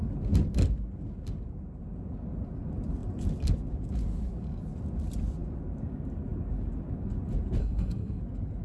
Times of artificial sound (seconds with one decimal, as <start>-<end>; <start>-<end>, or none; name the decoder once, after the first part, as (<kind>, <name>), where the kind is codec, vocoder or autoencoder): 7.6-8.2 (codec, SNAC)